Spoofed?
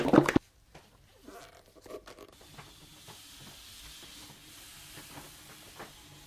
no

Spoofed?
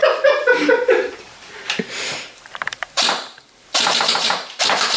yes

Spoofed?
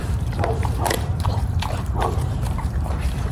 yes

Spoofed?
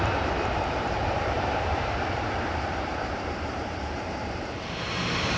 yes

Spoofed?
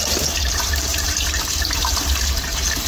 yes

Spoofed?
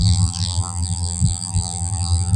yes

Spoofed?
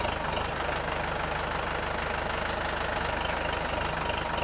no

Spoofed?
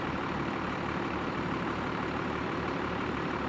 yes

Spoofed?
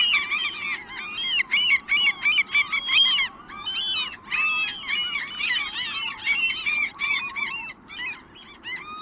no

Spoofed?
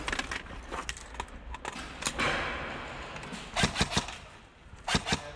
no